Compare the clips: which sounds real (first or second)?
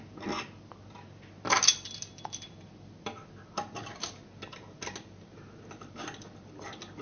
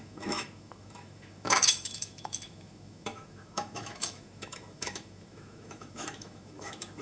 first